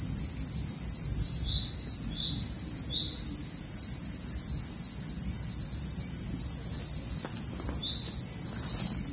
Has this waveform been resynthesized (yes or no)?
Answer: no